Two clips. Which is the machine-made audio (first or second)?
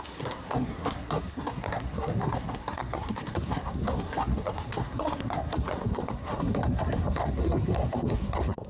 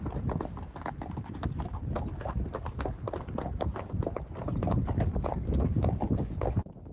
first